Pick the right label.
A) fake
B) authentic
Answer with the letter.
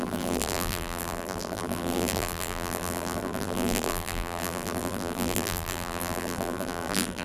A